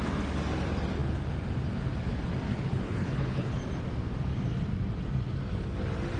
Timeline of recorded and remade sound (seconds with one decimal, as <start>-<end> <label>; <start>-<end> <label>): 0.0-2.5 recorded; 2.5-3.6 remade; 3.6-6.2 recorded